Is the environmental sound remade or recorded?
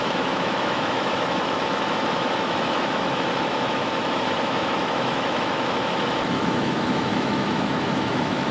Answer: remade